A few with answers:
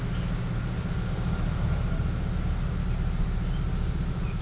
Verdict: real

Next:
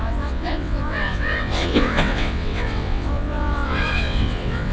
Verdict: fake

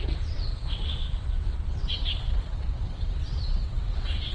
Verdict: fake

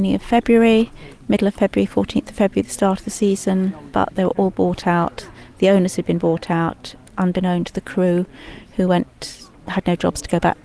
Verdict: real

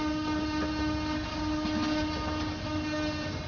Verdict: real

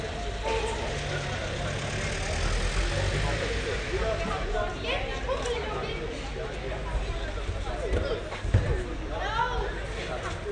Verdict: real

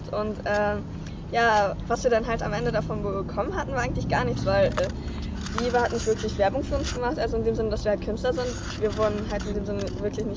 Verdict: real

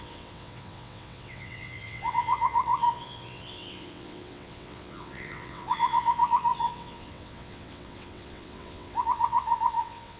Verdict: fake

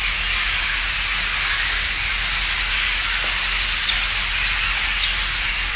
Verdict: real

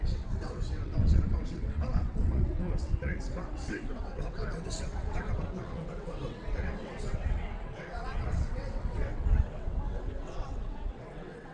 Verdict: fake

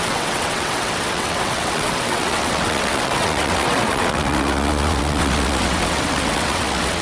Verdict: fake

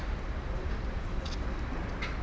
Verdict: real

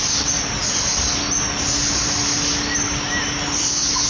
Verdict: real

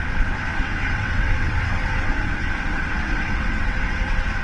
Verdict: fake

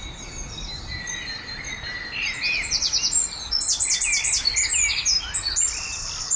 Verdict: real